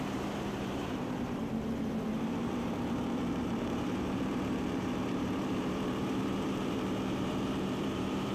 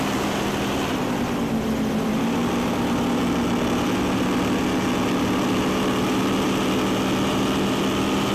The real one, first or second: second